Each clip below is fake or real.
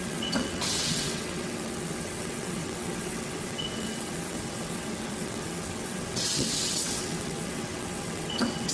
fake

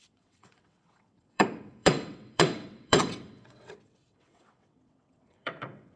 fake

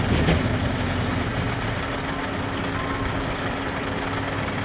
real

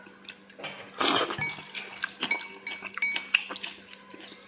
real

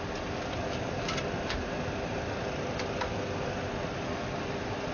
real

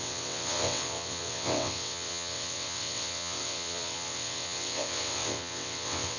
fake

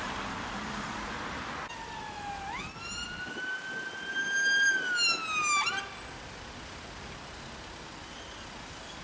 real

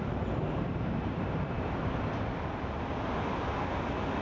real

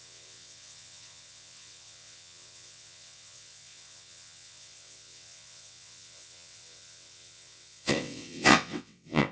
fake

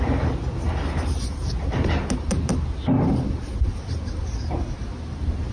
real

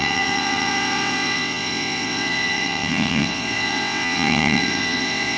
fake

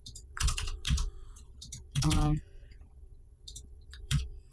fake